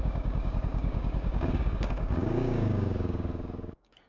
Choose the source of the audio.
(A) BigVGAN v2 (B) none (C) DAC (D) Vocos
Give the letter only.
C